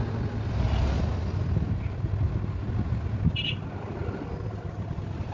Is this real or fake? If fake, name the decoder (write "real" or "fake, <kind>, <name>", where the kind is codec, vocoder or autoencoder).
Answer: real